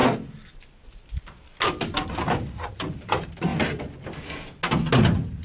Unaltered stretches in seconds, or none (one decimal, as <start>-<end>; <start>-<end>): 0.0-2.1; 3.5-5.0